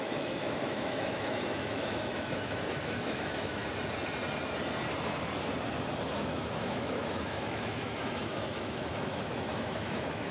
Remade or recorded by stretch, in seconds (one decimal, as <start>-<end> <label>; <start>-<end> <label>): 0.0-3.6 remade; 3.6-6.1 recorded; 6.1-10.3 remade